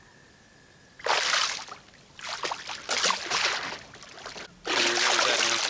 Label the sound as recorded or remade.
recorded